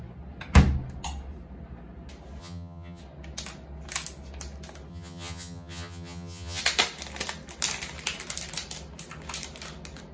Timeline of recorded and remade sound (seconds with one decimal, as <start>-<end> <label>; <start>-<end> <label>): 0.0-2.4 recorded; 2.4-3.0 remade; 3.0-4.9 recorded; 4.9-6.6 remade; 6.6-10.1 recorded

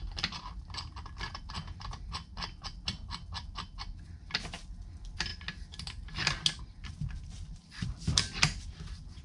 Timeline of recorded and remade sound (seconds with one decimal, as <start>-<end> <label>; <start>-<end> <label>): 0.0-5.3 remade; 5.3-6.6 recorded; 6.6-9.2 remade

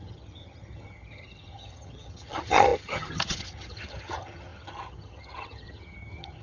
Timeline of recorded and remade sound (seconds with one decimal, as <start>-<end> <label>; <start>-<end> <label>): 0.0-6.4 remade

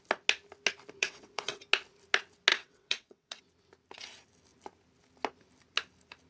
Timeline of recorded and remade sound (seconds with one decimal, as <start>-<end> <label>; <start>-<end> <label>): 0.0-1.0 recorded; 1.0-1.6 remade; 1.6-2.5 recorded; 2.5-3.4 remade; 3.4-6.3 recorded

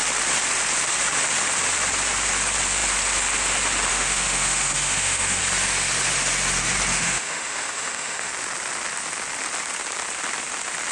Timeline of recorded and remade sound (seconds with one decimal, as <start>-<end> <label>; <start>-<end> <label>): 0.0-3.9 recorded; 3.9-5.4 remade; 5.4-6.9 recorded; 6.9-8.3 remade; 8.3-10.9 recorded

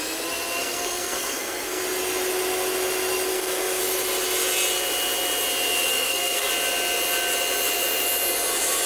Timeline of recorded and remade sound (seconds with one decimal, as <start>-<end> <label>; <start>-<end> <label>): 0.0-0.6 recorded; 0.6-1.8 remade; 1.8-3.3 recorded; 3.3-3.8 remade; 3.8-5.9 recorded; 5.9-6.5 remade; 6.5-8.9 recorded

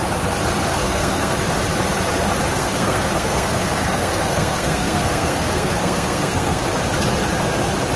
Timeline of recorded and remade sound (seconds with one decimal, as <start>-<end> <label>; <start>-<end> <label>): 0.0-0.7 recorded; 0.7-1.5 remade; 1.5-2.5 recorded; 2.5-6.6 remade; 6.6-8.0 recorded

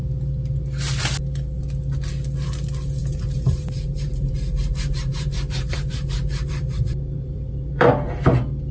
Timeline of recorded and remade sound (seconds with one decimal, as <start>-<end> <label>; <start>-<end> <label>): 0.0-3.0 recorded; 3.0-7.9 remade; 7.9-8.7 recorded